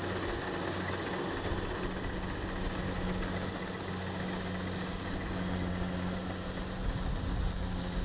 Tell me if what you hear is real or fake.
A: real